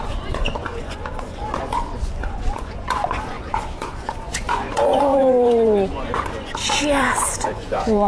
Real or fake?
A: fake